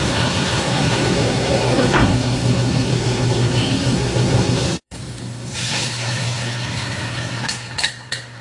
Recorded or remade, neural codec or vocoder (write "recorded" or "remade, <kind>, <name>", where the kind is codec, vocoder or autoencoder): remade, codec, SNAC